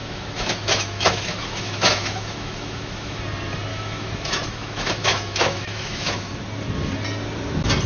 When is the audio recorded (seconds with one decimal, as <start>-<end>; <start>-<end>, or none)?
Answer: 3.2-3.7; 6.3-7.9